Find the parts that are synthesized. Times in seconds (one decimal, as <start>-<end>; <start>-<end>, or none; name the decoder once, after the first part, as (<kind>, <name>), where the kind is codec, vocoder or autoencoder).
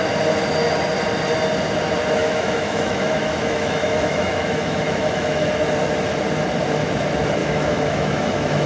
2.2-5.5 (autoencoder, DAC-VAE); 7.4-8.7